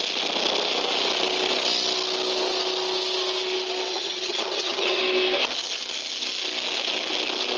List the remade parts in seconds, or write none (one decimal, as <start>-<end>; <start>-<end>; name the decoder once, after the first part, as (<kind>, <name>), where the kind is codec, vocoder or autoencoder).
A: 3.9-5.0 (vocoder, HiFi-GAN)